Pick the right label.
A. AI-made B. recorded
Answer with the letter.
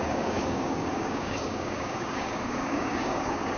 A